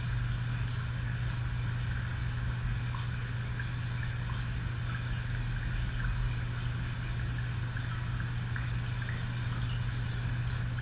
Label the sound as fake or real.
real